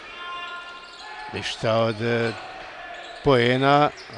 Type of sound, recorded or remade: recorded